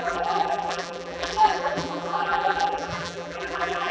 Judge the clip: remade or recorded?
remade